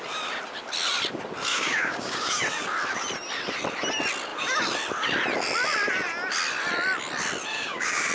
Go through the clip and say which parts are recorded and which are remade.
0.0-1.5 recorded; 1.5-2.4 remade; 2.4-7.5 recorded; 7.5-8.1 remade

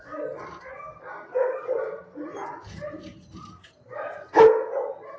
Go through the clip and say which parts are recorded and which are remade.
0.0-1.3 recorded; 1.3-4.4 remade; 4.4-5.2 recorded

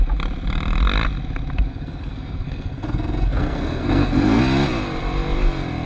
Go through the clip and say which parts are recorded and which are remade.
0.0-1.7 recorded; 1.7-4.4 remade; 4.4-5.9 recorded

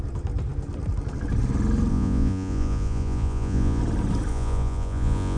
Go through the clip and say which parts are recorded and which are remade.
0.0-1.9 recorded; 1.9-3.8 remade; 3.8-4.3 recorded; 4.3-5.4 remade